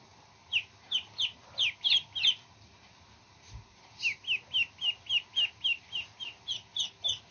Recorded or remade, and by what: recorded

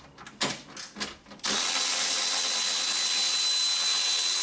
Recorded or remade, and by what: recorded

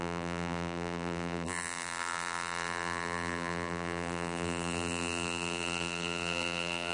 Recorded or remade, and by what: remade, vocoder, BigVGAN v2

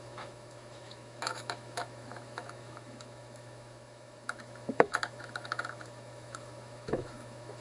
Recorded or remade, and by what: remade, autoencoder, DAC-VAE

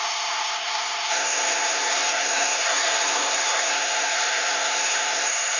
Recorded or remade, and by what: remade, codec, SNAC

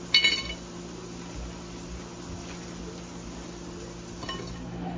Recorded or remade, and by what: recorded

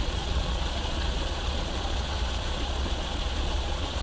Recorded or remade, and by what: remade, vocoder, Vocos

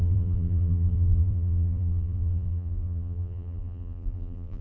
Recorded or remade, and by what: remade, vocoder, BigVGAN v2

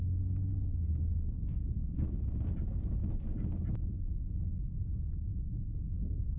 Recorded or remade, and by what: recorded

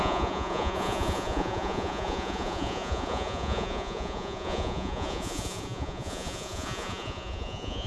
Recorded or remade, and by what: remade, vocoder, Vocos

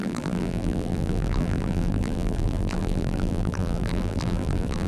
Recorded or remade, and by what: remade, vocoder, BigVGAN v2